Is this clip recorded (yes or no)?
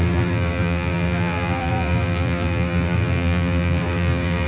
no